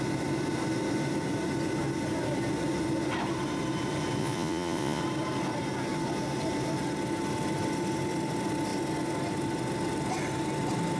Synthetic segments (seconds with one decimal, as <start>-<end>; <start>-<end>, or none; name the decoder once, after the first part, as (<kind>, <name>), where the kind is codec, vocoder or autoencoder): 4.2-5.0 (vocoder, Vocos)